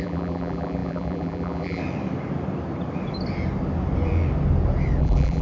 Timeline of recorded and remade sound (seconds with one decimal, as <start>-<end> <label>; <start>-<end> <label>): 0.0-1.8 remade; 1.8-5.0 recorded; 5.0-5.4 remade